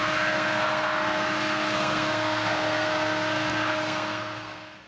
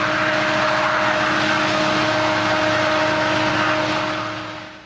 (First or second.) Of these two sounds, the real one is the second